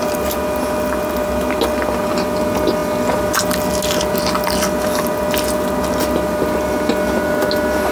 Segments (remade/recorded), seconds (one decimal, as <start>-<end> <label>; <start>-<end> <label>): 0.0-7.9 recorded